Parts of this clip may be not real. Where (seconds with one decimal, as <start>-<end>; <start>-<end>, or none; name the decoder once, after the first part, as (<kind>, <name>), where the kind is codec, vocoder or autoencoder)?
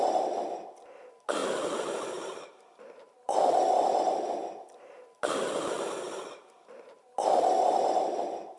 none